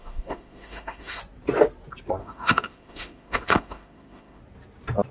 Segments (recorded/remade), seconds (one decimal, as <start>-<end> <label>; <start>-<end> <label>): 0.0-1.2 remade; 1.2-2.2 recorded; 2.2-4.4 remade; 4.4-5.1 recorded